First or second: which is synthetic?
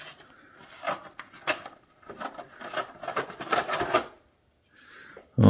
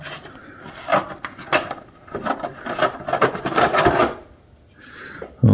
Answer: first